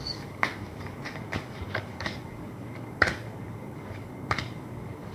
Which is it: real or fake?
fake